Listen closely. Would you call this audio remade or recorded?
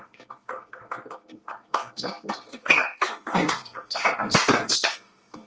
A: remade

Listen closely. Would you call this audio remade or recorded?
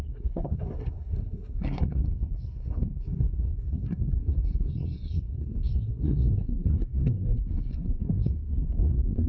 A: remade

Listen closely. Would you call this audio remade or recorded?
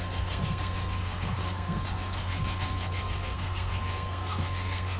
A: remade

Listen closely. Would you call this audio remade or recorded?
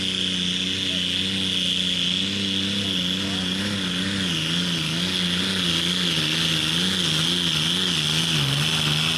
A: recorded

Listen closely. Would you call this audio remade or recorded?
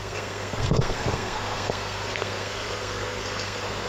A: remade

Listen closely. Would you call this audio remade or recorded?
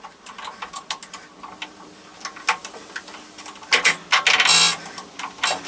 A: recorded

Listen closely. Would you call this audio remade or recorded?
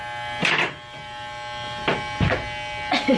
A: recorded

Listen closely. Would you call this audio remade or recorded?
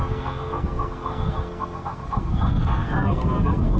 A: remade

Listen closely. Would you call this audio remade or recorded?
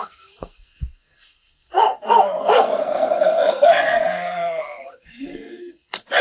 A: remade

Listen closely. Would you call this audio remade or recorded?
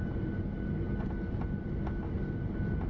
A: recorded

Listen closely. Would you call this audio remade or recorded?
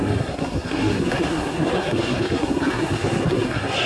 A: remade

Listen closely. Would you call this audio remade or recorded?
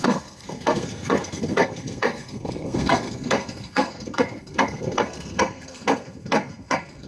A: remade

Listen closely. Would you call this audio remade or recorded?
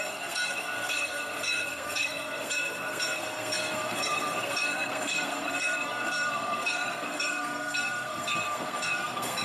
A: remade